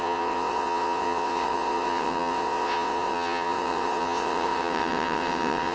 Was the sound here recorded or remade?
remade